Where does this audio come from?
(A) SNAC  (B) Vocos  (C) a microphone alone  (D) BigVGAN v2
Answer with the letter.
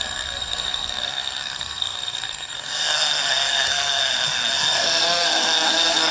A